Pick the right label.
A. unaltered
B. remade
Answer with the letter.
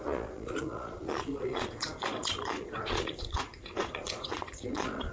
B